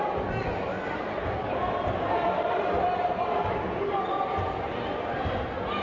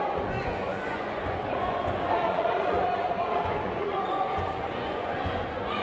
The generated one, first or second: second